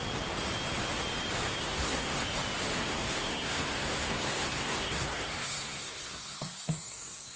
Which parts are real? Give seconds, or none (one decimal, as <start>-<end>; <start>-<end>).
0.0-1.6; 2.2-2.8